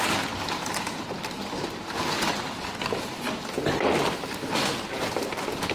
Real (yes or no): yes